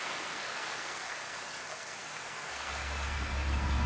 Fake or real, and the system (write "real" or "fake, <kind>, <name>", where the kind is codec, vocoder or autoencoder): fake, codec, SNAC